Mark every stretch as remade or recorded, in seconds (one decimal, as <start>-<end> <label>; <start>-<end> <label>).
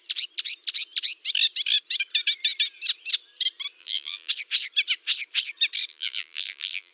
0.0-3.8 recorded; 3.8-4.3 remade; 4.3-5.9 recorded; 5.9-6.9 remade